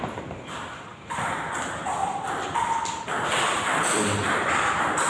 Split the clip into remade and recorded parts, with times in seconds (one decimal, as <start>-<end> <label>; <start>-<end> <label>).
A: 0.0-0.9 recorded; 0.9-1.5 remade; 1.5-2.0 recorded; 2.0-5.1 remade